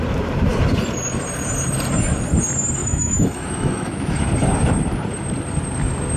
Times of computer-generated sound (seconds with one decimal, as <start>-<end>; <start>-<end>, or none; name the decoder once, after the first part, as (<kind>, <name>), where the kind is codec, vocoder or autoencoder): 2.8-4.2 (autoencoder, DAC-VAE)